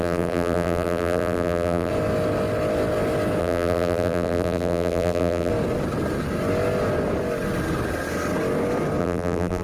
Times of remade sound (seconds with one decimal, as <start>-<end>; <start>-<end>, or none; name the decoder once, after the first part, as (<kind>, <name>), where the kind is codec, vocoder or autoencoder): 0.0-1.9 (vocoder, BigVGAN v2); 3.4-5.5; 9.0-9.6